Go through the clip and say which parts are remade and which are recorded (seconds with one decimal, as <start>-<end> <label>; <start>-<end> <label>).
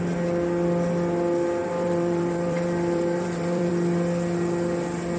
0.0-1.6 recorded; 1.6-3.7 remade; 3.7-5.2 recorded